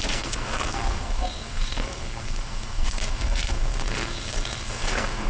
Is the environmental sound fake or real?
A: fake